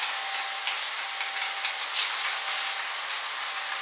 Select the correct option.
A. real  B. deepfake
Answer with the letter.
A